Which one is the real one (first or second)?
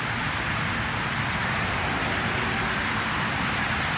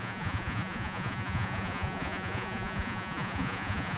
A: first